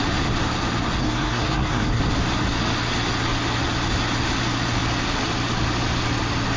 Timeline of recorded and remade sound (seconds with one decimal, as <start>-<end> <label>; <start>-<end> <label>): 0.0-1.0 recorded; 1.0-2.0 remade; 2.0-6.6 recorded